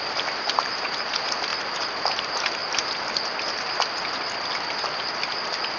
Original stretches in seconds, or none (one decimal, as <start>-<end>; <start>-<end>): 1.5-2.2; 2.6-5.8